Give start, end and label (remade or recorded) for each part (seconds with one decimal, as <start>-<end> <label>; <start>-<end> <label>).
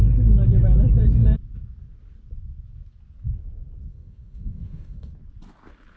0.0-3.9 recorded; 3.9-5.1 remade; 5.1-6.0 recorded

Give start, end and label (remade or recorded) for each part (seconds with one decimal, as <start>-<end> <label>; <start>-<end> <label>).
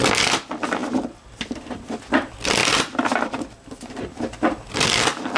0.0-0.8 recorded; 0.8-1.9 remade; 1.9-2.6 recorded; 2.6-3.6 remade; 3.6-5.4 recorded